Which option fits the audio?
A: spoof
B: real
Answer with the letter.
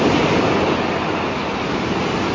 B